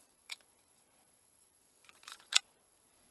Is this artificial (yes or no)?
yes